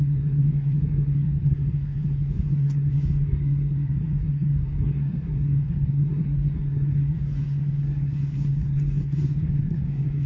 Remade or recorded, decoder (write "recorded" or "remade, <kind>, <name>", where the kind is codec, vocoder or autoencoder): remade, codec, SNAC